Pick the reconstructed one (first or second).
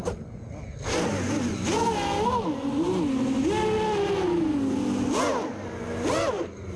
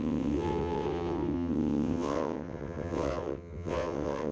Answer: second